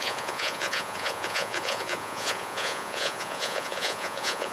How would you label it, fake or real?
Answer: fake